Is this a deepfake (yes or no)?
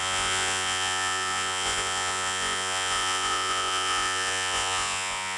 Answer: yes